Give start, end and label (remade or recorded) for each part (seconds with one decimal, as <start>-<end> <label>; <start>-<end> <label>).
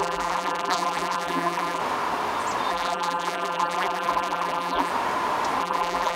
0.0-1.8 remade; 1.8-2.7 recorded; 2.7-4.9 remade; 4.9-5.6 recorded; 5.6-6.2 remade